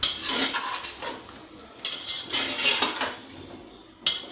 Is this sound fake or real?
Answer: real